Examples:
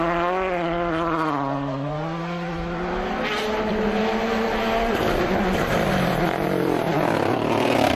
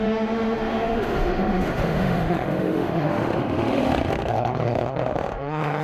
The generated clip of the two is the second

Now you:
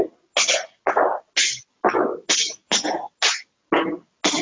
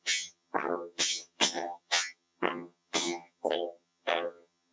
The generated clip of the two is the second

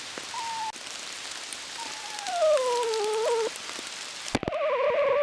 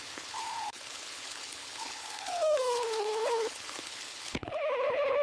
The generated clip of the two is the second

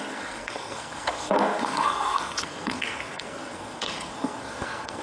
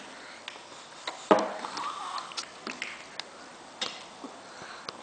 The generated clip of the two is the first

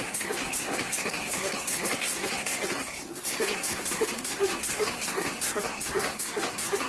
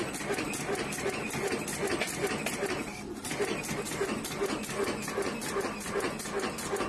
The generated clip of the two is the first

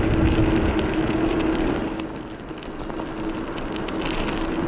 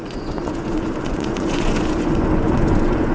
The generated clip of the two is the second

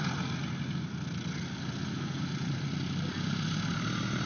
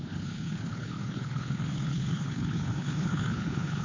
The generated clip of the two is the second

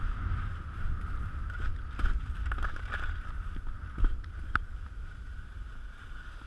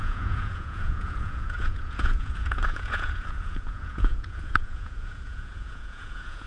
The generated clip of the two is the second